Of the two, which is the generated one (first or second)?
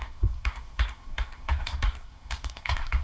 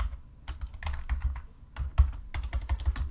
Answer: first